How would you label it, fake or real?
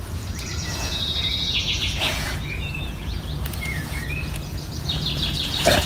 fake